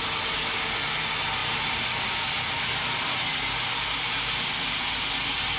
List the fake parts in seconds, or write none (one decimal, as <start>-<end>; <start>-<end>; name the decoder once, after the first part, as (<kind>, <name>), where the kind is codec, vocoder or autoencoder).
none